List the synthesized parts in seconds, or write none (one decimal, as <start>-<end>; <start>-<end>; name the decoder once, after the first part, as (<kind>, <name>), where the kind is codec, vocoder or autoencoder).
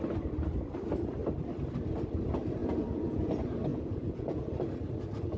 2.6-3.3 (vocoder, Vocos); 3.7-4.5